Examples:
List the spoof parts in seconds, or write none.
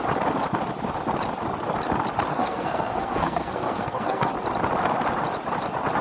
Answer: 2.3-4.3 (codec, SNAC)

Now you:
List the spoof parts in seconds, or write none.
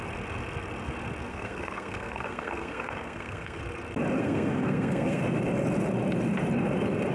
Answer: 1.3-3.6 (codec, SNAC); 4.2-5.2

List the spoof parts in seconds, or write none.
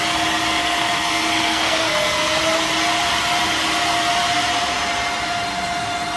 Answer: 0.6-2.4 (codec, SNAC)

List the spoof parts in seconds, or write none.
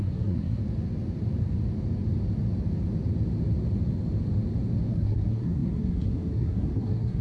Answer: 0.0-0.6 (codec, SNAC); 4.9-7.2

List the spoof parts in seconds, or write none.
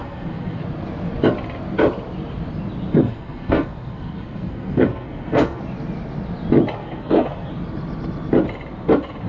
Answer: 0.0-0.6 (codec, SNAC); 2.9-5.6; 6.8-7.5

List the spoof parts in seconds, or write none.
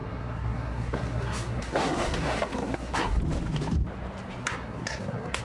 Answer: 0.0-3.2 (codec, SNAC); 4.4-5.4